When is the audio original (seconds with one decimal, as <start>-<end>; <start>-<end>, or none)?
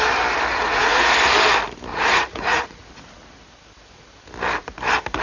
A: 0.0-0.5; 1.1-1.9; 2.9-5.2